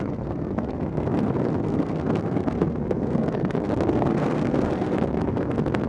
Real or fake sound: fake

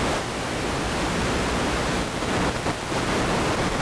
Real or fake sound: real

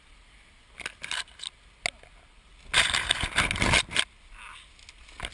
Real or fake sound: real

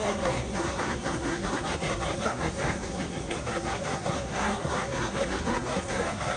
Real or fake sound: fake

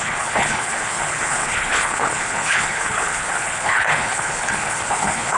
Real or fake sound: fake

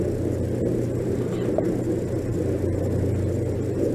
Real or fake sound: real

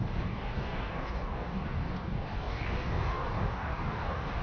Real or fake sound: fake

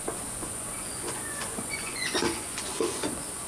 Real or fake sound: fake